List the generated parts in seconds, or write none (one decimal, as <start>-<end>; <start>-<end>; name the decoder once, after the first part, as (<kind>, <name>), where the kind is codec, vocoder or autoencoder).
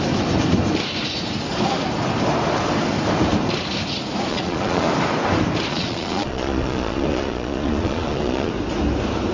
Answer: 4.3-4.9 (vocoder, Vocos); 5.7-8.5